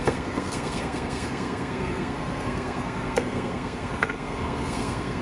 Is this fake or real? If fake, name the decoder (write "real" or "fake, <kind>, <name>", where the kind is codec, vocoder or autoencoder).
fake, codec, SNAC